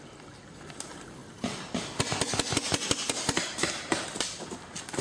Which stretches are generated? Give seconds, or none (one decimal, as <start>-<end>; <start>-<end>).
none